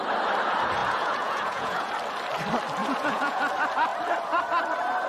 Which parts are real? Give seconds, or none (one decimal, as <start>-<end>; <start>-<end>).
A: 0.0-0.8; 1.9-2.8; 3.4-5.1